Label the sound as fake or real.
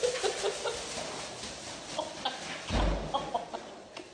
real